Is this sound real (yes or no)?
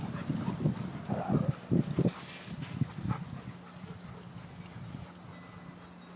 yes